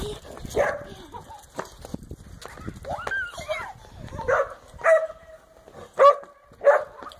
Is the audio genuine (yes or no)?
yes